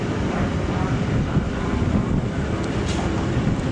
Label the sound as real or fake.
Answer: real